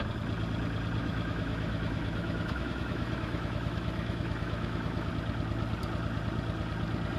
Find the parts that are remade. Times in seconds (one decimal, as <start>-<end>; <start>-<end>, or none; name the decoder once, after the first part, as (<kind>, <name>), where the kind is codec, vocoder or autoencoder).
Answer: 1.0-5.1 (autoencoder, DAC-VAE)